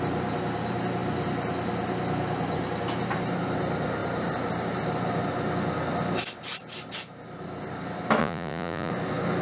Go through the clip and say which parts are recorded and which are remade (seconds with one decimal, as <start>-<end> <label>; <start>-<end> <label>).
0.0-8.2 recorded; 8.2-8.9 remade; 8.9-9.4 recorded